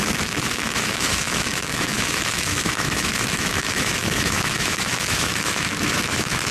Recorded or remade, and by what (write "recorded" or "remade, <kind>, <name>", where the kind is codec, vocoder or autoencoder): remade, autoencoder, DAC-VAE